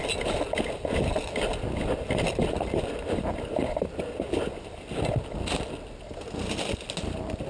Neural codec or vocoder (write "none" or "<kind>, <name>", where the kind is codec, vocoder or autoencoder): none